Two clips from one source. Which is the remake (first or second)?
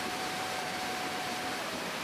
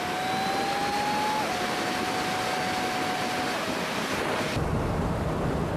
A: first